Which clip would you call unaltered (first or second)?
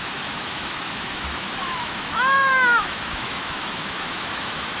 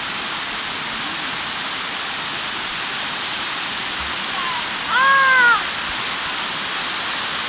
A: second